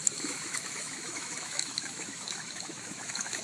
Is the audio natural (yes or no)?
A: no